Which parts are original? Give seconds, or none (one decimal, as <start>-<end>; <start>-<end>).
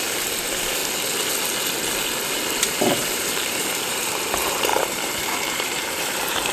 0.8-2.8